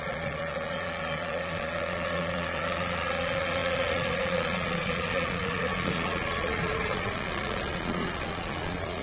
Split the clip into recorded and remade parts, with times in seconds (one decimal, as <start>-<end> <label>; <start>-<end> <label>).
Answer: 0.0-9.0 remade